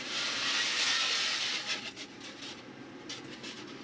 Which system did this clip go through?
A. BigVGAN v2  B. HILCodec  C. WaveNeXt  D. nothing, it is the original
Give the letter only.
D